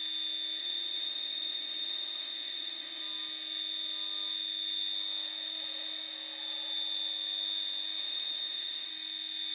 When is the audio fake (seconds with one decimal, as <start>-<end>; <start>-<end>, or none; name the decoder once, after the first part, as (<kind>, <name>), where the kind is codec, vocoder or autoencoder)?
0.6-3.0 (autoencoder, DAC-VAE); 8.0-8.9